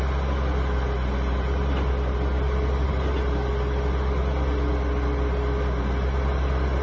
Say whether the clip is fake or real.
real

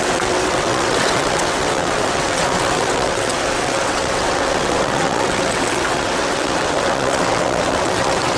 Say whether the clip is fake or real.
fake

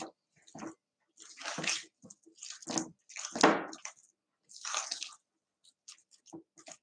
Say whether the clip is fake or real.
real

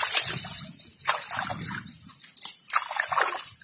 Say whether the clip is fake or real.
real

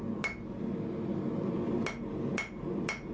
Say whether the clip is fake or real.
real